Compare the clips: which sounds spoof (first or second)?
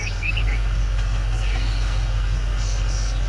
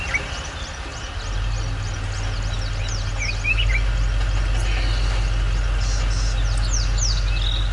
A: first